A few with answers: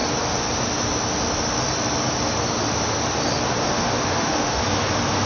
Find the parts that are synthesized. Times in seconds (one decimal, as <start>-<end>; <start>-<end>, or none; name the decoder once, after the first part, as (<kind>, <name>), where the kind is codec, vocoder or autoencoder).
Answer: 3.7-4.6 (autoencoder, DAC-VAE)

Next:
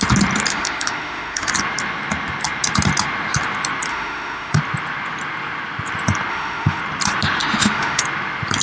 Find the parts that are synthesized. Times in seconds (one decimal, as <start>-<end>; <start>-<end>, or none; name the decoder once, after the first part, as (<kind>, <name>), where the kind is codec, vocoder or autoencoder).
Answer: 0.5-1.5 (autoencoder, DAC-VAE); 3.9-4.6; 6.3-6.8; 7.4-8.0

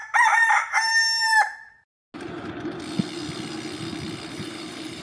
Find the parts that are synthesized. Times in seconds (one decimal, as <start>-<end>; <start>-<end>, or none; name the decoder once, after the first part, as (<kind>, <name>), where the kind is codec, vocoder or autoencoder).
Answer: 0.7-1.3 (vocoder, BigVGAN v2); 4.3-5.0

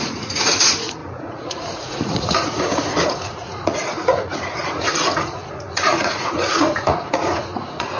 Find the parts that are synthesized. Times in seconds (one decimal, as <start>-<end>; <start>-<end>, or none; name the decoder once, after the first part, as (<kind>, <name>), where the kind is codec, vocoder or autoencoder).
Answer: 0.0-8.0 (vocoder, Vocos)

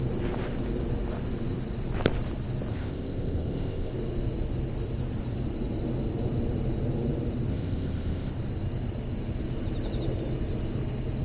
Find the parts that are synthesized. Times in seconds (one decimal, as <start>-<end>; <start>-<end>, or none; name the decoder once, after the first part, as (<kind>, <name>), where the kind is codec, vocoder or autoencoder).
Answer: 2.7-3.9 (codec, ZipCodec); 7.5-8.3